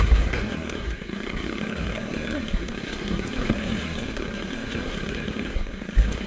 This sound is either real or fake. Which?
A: fake